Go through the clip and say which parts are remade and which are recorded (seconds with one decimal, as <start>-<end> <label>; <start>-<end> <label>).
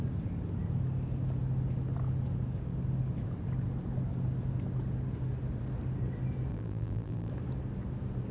0.0-6.5 recorded; 6.5-7.3 remade; 7.3-8.3 recorded